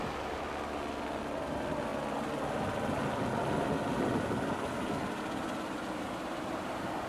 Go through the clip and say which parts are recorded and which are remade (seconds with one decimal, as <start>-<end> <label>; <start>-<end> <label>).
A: 0.0-7.1 recorded